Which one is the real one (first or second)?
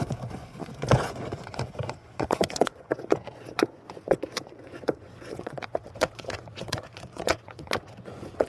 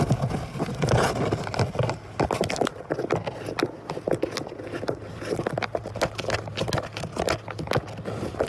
second